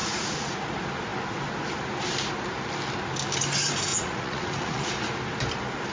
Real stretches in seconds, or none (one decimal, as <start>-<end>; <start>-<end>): 0.7-3.9; 4.9-5.9